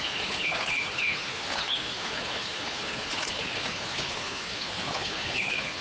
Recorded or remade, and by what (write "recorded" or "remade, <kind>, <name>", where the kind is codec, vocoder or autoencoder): remade, codec, HILCodec